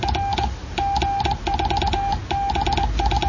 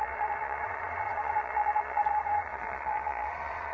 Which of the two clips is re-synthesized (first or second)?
second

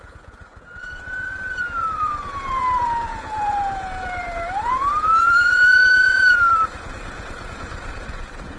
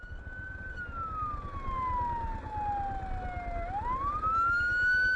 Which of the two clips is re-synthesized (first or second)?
first